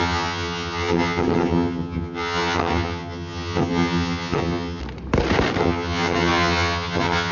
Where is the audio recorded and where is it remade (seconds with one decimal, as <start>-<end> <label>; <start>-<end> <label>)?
0.0-4.8 remade; 4.8-5.6 recorded; 5.6-7.3 remade